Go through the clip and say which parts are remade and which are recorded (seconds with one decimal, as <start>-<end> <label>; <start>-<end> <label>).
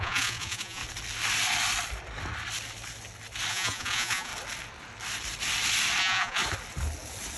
0.0-0.8 remade; 0.8-3.5 recorded; 3.5-4.3 remade; 4.3-6.0 recorded; 6.0-6.4 remade; 6.4-7.4 recorded